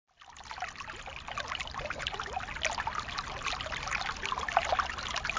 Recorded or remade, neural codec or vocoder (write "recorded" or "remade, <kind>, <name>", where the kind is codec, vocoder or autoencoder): recorded